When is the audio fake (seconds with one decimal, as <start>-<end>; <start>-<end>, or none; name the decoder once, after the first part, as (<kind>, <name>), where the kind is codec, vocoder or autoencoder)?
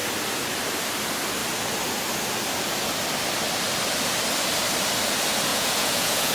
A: 5.5-6.3 (vocoder, Vocos)